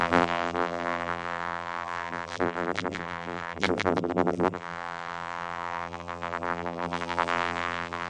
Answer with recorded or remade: remade